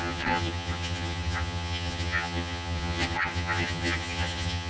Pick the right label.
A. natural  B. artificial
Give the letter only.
B